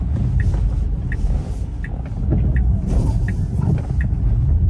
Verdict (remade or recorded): recorded